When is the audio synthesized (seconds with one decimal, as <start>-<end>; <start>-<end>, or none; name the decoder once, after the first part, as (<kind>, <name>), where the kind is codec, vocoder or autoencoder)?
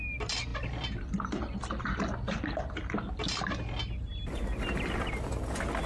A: none